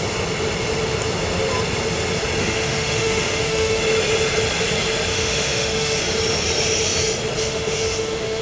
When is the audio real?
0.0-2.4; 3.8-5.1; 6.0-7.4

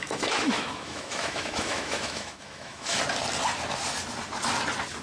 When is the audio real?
3.0-5.0

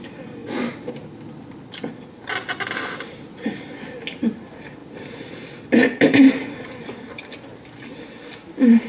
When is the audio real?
0.0-0.4; 1.1-4.8; 7.0-8.9

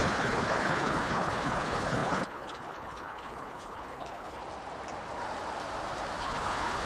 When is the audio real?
4.4-6.2